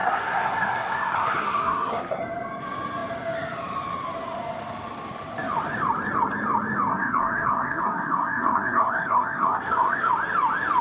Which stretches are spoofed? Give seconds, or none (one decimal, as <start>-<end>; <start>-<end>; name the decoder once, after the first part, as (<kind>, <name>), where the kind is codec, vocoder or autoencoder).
0.0-2.2 (codec, SNAC); 6.9-10.1